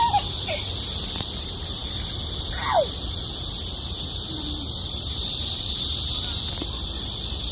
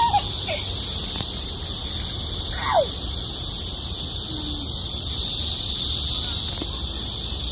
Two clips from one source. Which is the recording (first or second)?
second